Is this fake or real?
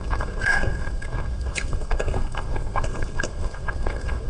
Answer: fake